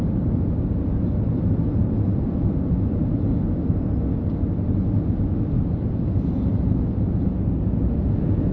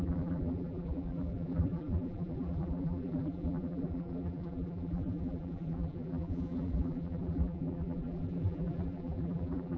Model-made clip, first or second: second